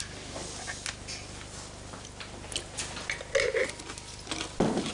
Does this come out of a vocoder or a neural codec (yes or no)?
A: no